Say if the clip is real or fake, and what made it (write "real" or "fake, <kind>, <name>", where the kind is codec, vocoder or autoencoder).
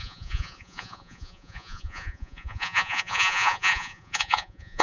fake, vocoder, Vocos